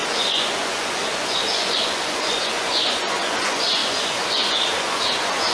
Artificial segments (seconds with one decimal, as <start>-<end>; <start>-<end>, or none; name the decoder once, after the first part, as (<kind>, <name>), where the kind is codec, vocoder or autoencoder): 0.0-5.5 (vocoder, Vocos)

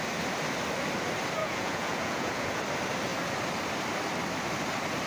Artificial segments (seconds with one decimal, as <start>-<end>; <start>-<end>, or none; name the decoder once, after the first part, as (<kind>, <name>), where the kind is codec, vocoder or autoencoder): 1.4-2.6 (vocoder, Vocos)

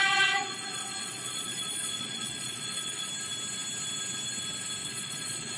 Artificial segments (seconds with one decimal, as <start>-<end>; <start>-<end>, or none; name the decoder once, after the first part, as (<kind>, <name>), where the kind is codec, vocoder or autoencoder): 0.0-3.1 (vocoder, Vocos); 4.8-5.6

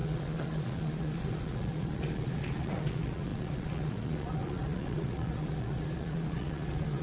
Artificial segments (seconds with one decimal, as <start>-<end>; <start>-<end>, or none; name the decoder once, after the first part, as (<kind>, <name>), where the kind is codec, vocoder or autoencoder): 0.0-7.0 (vocoder, Vocos)

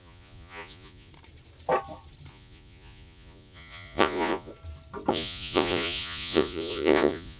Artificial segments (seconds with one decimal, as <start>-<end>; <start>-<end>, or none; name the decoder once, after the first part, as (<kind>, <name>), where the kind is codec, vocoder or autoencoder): 0.0-1.1 (vocoder, Vocos); 2.3-4.5; 5.1-7.4

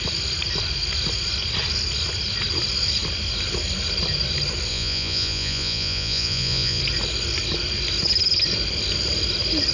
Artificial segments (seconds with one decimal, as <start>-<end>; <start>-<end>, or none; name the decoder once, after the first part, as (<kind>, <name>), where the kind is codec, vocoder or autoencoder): 4.7-6.8 (vocoder, Vocos)

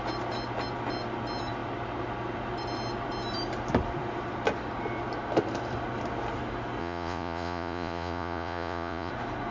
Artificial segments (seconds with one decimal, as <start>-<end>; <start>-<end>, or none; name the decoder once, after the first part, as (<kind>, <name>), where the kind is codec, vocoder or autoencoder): 6.8-9.1 (vocoder, Vocos)